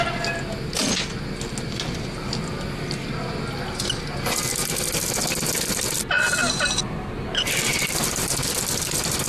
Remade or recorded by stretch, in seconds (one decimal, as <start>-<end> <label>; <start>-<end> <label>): 0.0-7.7 recorded; 7.7-8.9 remade; 8.9-9.3 recorded